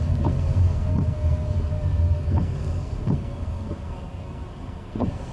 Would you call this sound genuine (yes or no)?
no